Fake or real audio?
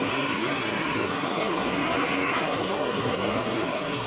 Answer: fake